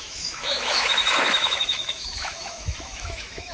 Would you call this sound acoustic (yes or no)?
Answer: no